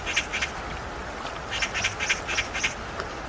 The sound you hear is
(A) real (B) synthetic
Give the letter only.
A